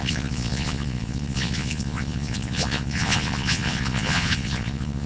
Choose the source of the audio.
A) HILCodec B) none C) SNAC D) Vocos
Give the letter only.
D